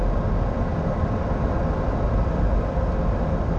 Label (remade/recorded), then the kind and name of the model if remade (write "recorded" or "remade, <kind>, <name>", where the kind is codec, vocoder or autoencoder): recorded